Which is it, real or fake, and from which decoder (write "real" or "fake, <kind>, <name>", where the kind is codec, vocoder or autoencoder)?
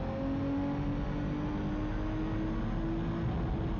real